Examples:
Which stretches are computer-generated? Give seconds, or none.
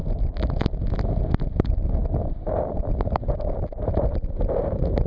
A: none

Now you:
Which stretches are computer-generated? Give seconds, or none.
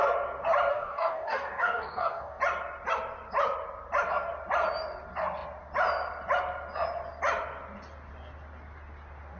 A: 0.7-2.4 (codec, DAC)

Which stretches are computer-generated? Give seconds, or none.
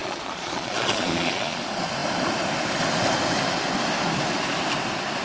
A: 0.0-1.6 (vocoder, Vocos)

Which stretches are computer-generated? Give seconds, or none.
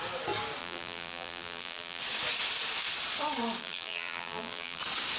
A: 0.6-2.0 (vocoder, BigVGAN v2); 3.6-4.8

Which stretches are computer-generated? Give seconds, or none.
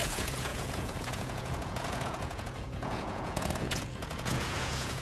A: 0.0-5.0 (vocoder, Vocos)